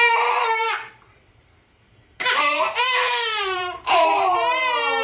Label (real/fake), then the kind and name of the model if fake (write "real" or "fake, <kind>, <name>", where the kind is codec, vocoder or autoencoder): fake, vocoder, BigVGAN v2